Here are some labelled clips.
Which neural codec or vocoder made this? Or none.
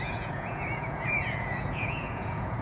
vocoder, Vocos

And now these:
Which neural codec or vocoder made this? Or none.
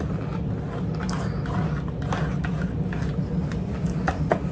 none